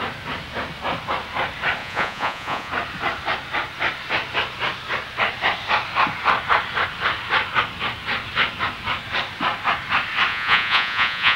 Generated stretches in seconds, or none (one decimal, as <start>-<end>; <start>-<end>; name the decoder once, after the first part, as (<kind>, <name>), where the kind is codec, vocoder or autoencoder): 1.8-2.7 (vocoder, Vocos); 10.3-11.4